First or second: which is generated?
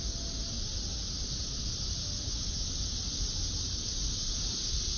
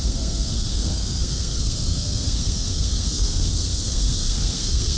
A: second